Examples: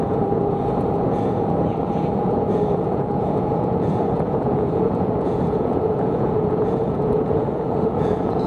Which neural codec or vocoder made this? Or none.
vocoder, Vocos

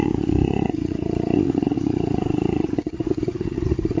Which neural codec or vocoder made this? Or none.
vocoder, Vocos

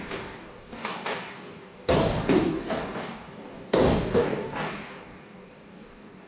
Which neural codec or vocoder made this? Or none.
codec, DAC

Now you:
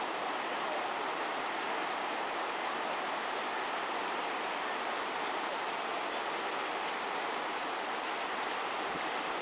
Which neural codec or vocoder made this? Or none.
none